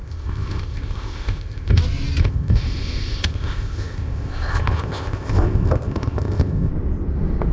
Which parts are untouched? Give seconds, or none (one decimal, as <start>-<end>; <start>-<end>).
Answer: 1.8-2.2; 6.7-7.5